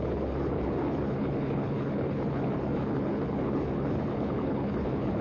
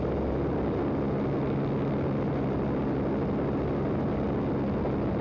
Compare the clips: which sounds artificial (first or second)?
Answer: first